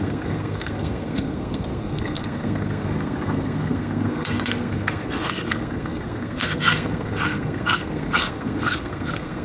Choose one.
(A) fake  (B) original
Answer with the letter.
A